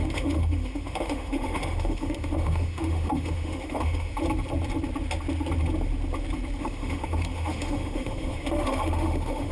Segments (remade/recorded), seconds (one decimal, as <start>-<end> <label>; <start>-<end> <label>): 0.0-4.1 remade; 4.1-6.6 recorded; 6.6-9.5 remade